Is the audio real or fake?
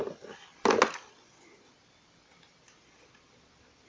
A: real